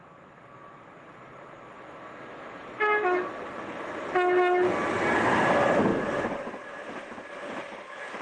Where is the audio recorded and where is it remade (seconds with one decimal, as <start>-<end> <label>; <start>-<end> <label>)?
0.0-8.2 recorded